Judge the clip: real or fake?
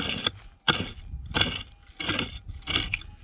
real